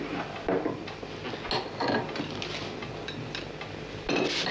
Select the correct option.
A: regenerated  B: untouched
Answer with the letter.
B